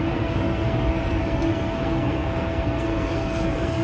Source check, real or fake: fake